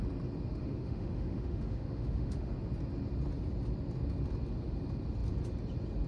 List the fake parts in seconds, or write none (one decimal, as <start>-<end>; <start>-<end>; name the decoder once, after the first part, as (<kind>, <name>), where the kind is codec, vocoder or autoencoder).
0.5-2.5 (autoencoder, DAC-VAE)